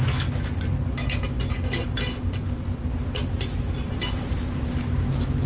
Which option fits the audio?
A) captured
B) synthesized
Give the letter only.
A